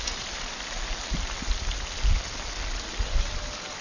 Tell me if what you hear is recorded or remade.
recorded